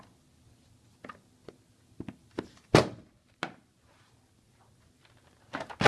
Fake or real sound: real